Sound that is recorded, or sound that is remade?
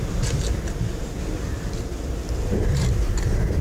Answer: recorded